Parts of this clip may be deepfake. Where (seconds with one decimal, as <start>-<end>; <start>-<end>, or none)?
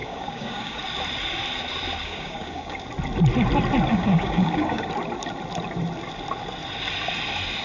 0.0-0.8; 2.0-2.8; 3.9-4.9